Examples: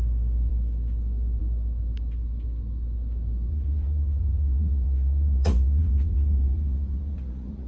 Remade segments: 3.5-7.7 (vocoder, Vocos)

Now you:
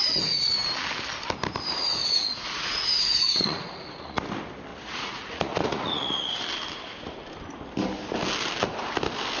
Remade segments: 2.0-4.2 (vocoder, Vocos); 4.7-6.4

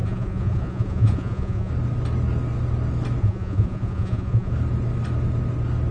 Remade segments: 0.0-1.7 (vocoder, Vocos); 3.2-4.5

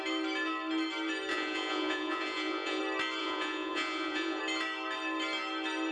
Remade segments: 1.3-2.8 (vocoder, Vocos); 3.2-4.4

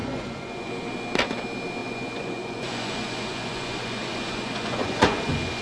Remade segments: 0.0-0.8 (vocoder, Vocos); 1.8-5.6

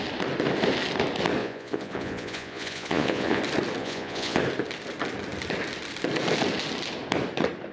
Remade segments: 1.4-3.4 (vocoder, Vocos); 3.8-4.4

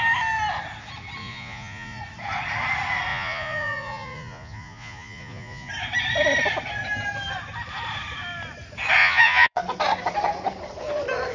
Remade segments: 1.2-2.0 (vocoder, Vocos); 3.1-5.7; 9.0-9.6